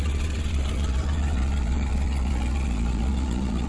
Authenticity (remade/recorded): remade